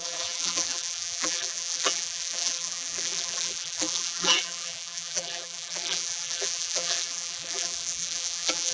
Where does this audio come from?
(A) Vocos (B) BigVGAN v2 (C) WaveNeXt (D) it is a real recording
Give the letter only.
B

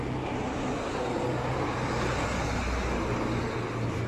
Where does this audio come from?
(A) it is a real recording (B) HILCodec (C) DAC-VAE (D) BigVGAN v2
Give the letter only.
A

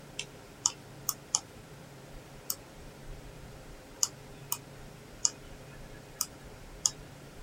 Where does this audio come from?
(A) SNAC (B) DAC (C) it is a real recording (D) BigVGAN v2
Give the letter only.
D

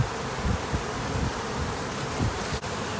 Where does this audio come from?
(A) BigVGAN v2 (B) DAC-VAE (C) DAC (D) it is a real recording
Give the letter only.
A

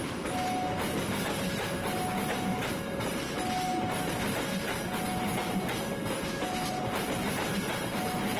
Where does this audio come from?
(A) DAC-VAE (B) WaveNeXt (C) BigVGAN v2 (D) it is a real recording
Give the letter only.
D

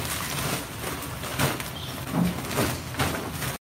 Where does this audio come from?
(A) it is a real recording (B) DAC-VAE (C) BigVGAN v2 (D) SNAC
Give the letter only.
A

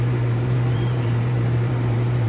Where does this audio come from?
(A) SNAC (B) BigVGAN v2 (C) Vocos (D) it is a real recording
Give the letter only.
B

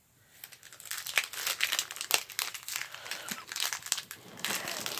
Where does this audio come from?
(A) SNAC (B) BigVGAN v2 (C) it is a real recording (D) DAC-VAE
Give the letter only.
C